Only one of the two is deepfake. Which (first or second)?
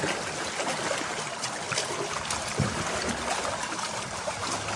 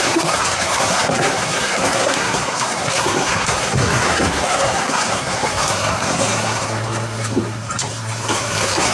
second